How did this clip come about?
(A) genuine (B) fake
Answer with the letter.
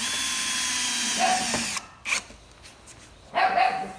A